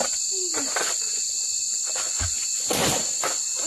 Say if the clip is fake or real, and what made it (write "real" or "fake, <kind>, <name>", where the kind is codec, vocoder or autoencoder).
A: real